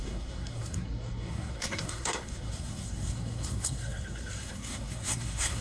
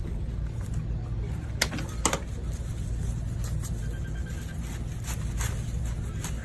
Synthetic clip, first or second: first